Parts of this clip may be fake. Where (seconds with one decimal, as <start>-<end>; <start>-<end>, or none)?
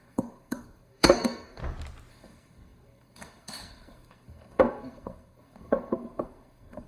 0.0-1.6; 2.1-6.9